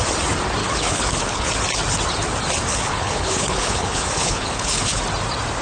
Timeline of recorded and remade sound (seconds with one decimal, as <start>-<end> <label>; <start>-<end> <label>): 0.0-0.6 recorded; 0.6-1.5 remade; 1.5-2.7 recorded; 2.7-5.0 remade; 5.0-5.6 recorded

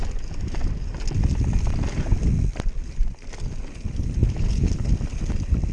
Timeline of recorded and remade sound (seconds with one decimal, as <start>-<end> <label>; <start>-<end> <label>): 0.0-4.2 recorded; 4.2-4.9 remade; 4.9-5.7 recorded

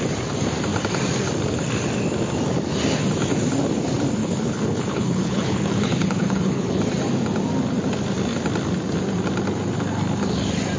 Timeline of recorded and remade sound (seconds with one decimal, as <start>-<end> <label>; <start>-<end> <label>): 0.0-4.2 recorded; 4.2-6.8 remade; 6.8-10.8 recorded

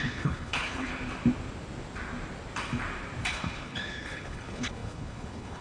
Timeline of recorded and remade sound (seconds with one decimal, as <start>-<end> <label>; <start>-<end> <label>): 0.0-0.9 remade; 0.9-3.3 recorded; 3.3-5.6 remade

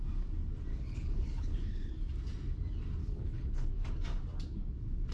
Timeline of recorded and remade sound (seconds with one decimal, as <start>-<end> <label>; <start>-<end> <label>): 0.0-0.7 recorded; 0.7-1.9 remade; 1.9-3.0 recorded; 3.0-3.7 remade; 3.7-5.1 recorded